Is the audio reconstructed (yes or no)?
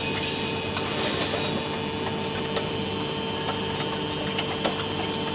no